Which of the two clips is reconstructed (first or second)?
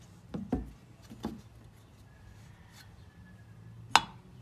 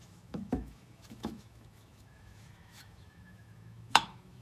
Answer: second